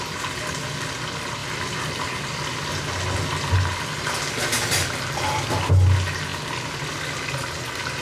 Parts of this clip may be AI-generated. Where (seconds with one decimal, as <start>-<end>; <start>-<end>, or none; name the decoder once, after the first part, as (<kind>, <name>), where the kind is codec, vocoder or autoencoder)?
none

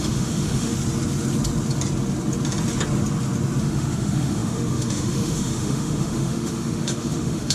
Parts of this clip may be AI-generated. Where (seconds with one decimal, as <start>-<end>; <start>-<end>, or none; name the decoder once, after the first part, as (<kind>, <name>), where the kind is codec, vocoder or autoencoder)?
0.0-0.7 (autoencoder, DAC-VAE); 3.6-7.5

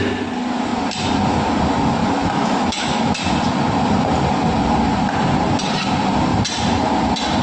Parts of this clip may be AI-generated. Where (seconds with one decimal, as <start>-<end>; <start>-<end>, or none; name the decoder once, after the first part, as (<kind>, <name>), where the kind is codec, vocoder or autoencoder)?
2.0-3.1 (autoencoder, DAC-VAE)

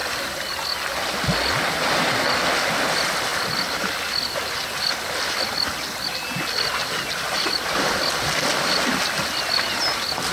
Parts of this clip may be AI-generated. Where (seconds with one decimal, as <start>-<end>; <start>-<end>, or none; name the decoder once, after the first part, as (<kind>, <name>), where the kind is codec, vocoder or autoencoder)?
none